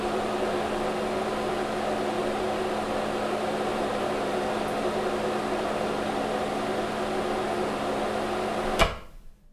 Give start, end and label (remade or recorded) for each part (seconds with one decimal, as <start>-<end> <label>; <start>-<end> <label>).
0.0-3.7 recorded; 3.7-4.5 remade; 4.5-9.5 recorded